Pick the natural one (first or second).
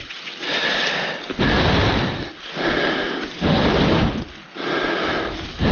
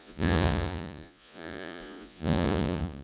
first